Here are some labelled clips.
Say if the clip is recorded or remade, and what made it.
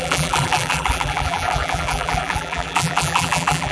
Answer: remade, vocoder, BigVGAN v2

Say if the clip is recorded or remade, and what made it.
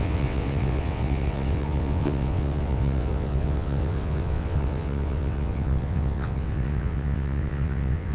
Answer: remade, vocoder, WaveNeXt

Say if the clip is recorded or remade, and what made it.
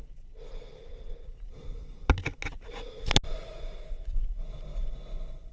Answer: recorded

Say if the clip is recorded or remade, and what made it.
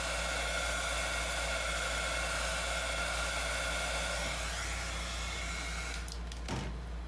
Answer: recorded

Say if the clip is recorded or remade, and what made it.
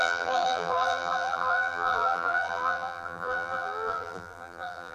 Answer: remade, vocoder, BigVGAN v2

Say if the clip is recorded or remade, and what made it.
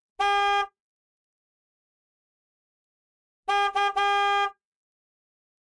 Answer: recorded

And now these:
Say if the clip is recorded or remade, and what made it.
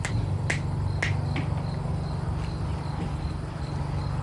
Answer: recorded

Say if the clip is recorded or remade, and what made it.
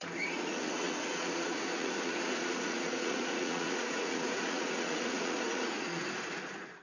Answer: remade, vocoder, Vocos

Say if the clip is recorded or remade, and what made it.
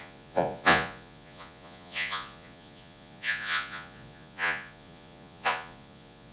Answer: remade, vocoder, Vocos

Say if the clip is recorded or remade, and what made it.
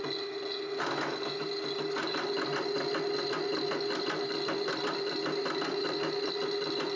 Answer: recorded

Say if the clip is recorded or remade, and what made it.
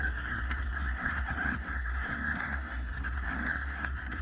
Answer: remade, codec, SNAC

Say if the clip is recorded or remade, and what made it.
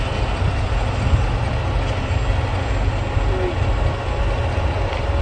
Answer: recorded